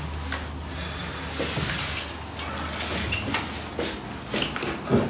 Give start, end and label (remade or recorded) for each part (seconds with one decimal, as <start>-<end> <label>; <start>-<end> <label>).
0.0-5.1 recorded